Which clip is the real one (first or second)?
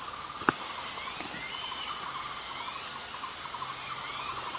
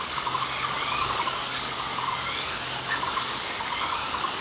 first